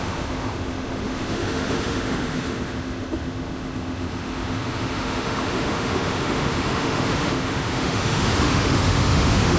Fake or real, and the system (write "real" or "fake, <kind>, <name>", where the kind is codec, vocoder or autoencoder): fake, autoencoder, DAC-VAE